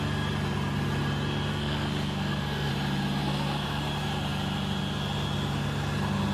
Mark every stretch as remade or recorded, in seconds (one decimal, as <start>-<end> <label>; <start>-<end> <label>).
0.0-1.5 recorded; 1.5-2.7 remade; 2.7-3.2 recorded; 3.2-3.8 remade; 3.8-6.3 recorded